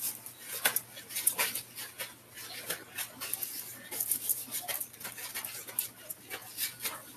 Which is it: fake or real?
real